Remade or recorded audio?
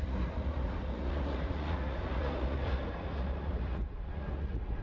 remade